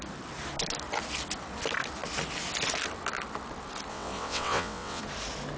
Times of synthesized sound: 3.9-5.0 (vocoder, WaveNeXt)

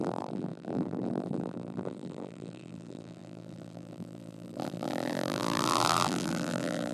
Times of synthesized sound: 0.0-6.9 (vocoder, BigVGAN v2)

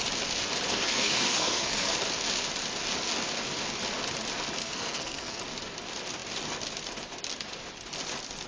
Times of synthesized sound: 0.7-1.9 (codec, SNAC); 4.6-5.4

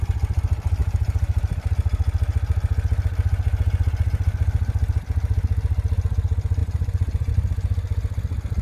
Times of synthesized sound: 0.8-1.7 (vocoder, BigVGAN v2); 6.6-7.3

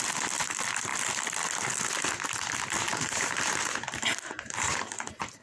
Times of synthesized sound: 2.9-5.4 (vocoder, BigVGAN v2)

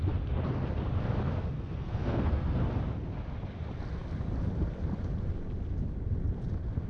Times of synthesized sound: 1.3-2.7 (codec, SNAC)

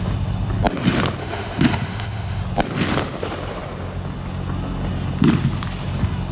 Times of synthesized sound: 1.2-2.4 (autoencoder, DAC-VAE)

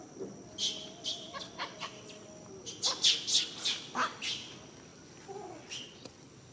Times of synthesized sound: none